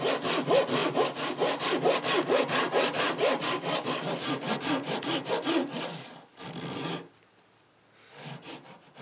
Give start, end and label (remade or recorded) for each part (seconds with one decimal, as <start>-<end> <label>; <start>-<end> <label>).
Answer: 0.0-9.0 recorded